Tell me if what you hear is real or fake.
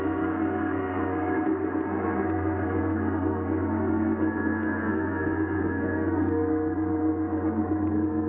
fake